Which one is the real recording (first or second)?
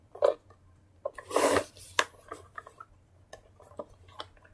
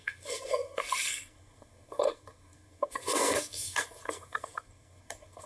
first